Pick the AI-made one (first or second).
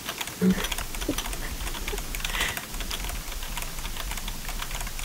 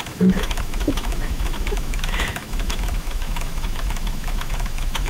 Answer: second